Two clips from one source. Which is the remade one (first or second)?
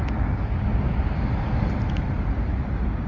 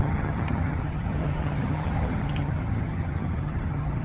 second